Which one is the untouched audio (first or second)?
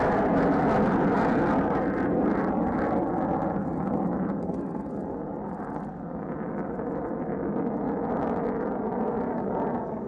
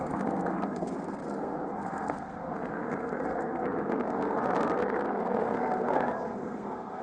first